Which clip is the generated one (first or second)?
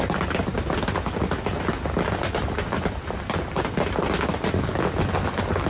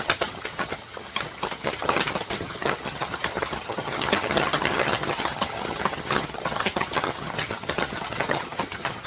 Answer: second